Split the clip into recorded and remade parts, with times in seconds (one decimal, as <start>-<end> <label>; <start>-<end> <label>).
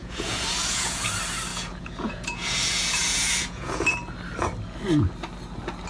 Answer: 0.0-1.1 remade; 1.1-1.5 recorded; 1.5-3.8 remade; 3.8-5.9 recorded